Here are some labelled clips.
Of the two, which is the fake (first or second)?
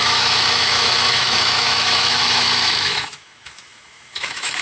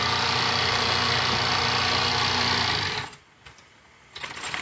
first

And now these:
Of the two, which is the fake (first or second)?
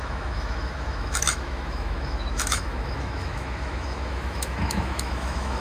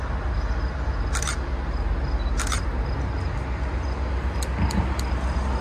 first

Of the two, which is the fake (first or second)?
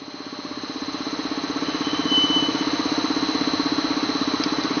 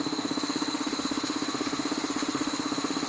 second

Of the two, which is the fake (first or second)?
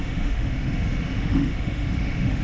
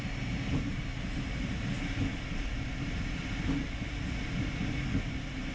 first